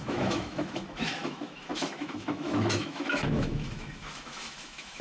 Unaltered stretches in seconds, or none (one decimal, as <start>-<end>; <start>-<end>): none